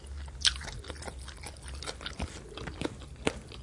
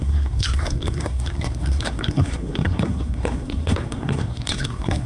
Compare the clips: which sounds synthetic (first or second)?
second